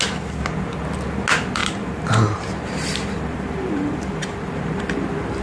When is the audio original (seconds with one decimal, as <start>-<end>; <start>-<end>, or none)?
0.0-1.6; 4.8-5.4